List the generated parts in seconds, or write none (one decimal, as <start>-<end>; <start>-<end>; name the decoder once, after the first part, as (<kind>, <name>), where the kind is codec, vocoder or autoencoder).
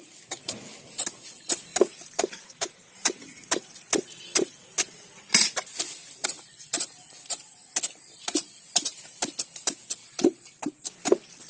1.7-3.9 (vocoder, BigVGAN v2); 10.0-10.6